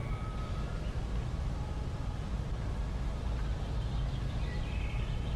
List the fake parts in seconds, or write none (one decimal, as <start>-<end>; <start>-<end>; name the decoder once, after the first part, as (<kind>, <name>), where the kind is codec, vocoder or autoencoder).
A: none